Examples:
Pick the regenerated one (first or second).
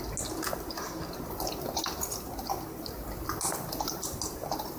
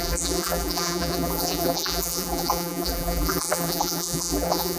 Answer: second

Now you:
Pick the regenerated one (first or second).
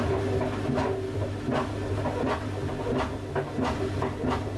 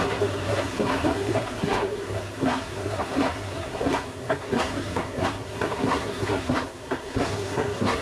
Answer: second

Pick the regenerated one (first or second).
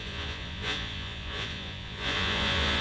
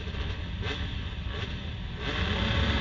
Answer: first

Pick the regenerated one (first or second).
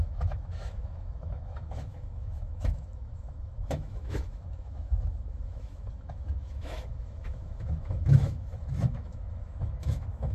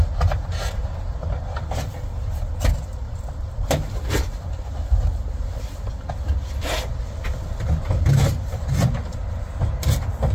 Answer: first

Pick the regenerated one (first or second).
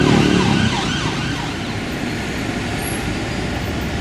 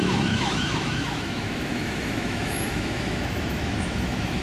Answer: second